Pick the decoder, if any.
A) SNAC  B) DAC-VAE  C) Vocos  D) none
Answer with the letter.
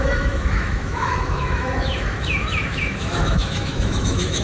B